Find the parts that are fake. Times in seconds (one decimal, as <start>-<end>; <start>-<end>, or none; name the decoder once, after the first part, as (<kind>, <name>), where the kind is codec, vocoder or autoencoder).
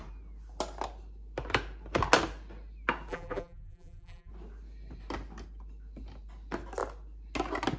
3.1-4.3 (vocoder, BigVGAN v2)